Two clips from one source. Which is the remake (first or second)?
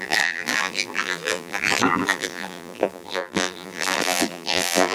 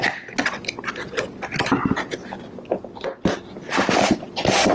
first